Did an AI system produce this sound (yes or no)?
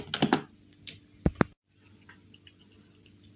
no